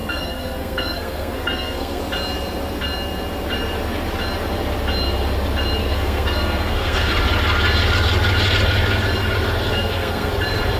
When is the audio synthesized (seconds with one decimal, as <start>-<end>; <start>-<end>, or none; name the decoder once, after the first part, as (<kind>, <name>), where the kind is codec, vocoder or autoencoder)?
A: 0.0-2.0 (codec, SNAC); 5.8-7.1; 9.7-10.3